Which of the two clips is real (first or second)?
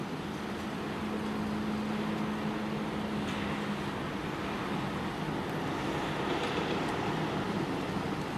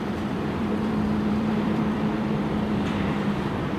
first